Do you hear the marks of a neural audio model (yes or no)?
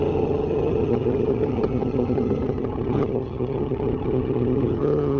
yes